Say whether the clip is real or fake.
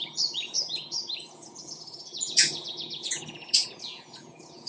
fake